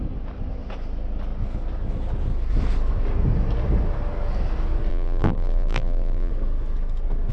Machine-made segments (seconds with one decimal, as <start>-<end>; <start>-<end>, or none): 4.9-6.3